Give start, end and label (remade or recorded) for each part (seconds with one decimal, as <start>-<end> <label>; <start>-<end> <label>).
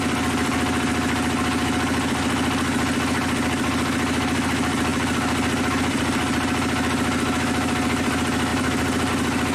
0.0-8.5 recorded; 8.5-9.1 remade; 9.1-9.5 recorded